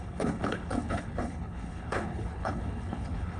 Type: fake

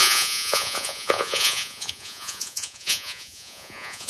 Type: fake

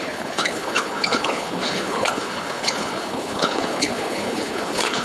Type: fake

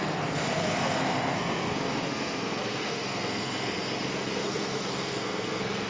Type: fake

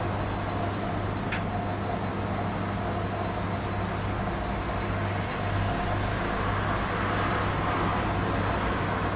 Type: real